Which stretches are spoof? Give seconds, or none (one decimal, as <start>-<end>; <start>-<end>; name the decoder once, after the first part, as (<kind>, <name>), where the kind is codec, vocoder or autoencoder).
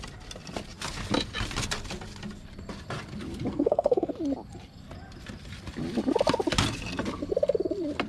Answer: 3.5-4.1 (codec, SNAC)